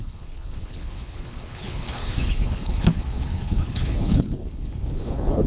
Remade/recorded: remade